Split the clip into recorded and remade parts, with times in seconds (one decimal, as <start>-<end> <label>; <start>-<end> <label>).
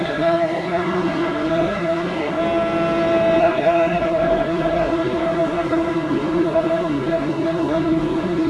0.0-2.4 remade; 2.4-3.4 recorded; 3.4-8.5 remade